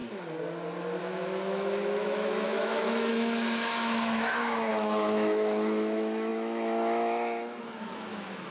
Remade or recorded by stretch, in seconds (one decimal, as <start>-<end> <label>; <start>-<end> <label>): 0.0-1.0 recorded; 1.0-8.5 remade